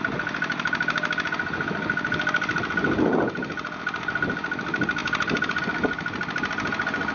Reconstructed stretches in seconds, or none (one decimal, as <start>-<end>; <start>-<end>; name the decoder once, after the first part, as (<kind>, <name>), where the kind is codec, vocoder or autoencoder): 5.0-5.6 (vocoder, BigVGAN v2)